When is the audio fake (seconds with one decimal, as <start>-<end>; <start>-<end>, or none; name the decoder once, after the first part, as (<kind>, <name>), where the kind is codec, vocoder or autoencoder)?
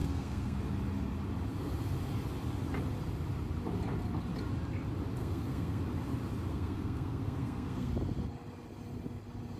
0.0-0.6 (codec, SNAC); 5.2-5.8; 6.5-7.9